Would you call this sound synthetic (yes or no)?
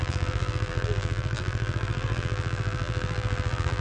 yes